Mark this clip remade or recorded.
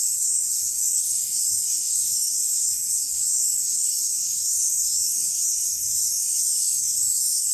remade